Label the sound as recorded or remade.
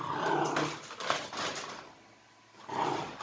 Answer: recorded